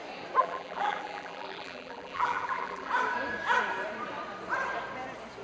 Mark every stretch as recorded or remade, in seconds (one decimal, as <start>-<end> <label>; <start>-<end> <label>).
0.0-0.4 recorded; 0.4-2.9 remade; 2.9-5.4 recorded